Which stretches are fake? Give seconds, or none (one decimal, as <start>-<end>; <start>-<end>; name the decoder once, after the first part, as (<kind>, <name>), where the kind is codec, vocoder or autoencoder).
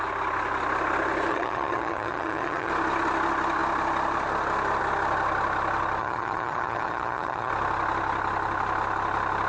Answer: 1.3-2.7 (vocoder, HiFi-GAN); 6.0-7.5